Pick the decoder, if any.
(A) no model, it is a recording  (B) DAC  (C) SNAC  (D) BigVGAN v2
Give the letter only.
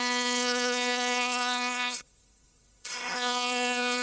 C